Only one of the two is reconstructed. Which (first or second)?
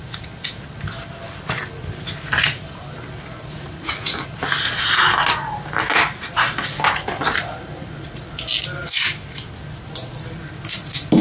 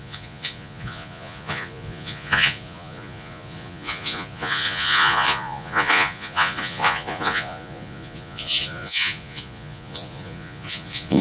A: second